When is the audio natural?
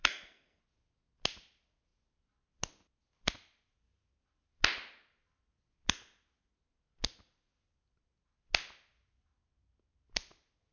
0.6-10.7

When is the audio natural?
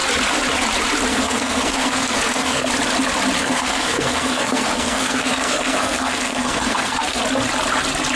0.0-1.1; 2.7-3.4; 7.2-8.2